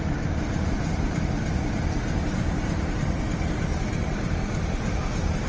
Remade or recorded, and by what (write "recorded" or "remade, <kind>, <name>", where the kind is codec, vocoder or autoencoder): remade, vocoder, BigVGAN v2